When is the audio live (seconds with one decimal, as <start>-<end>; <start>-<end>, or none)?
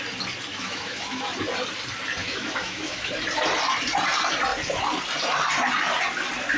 0.0-0.5; 1.3-2.2; 3.1-6.6